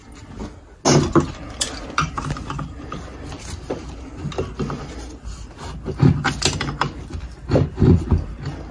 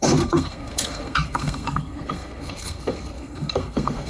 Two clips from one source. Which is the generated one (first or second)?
second